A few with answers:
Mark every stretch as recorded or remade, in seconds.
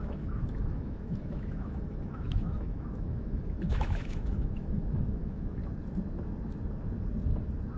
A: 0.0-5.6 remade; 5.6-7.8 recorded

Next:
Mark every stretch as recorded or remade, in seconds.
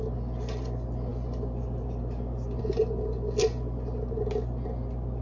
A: 0.0-5.2 recorded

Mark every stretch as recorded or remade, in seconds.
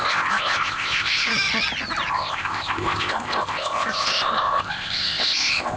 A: 0.0-1.3 remade; 1.3-2.1 recorded; 2.1-5.8 remade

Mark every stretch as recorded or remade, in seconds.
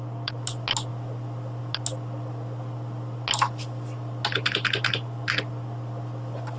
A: 0.0-6.6 recorded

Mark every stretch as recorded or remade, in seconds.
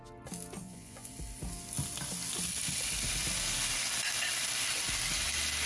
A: 0.0-0.6 recorded; 0.6-1.1 remade; 1.1-5.7 recorded